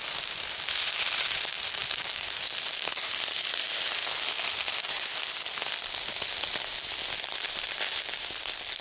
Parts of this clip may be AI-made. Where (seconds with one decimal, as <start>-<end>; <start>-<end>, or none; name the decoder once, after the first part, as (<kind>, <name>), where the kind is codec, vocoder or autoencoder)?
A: 0.0-4.0 (vocoder, BigVGAN v2); 7.4-8.8